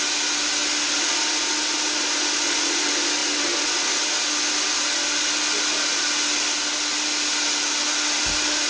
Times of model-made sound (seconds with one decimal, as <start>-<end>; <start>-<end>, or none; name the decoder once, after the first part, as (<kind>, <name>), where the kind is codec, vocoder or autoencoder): none